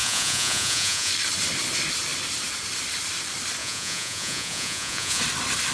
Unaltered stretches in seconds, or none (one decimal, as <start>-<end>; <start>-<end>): 1.1-3.6; 5.2-5.7